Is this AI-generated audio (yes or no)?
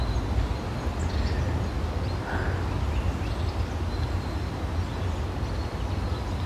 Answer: no